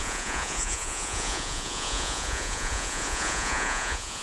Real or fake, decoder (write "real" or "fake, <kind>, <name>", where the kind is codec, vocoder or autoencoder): fake, vocoder, Vocos